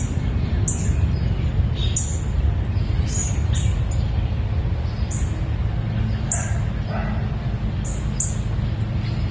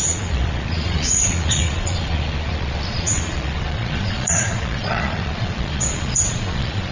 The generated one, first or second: second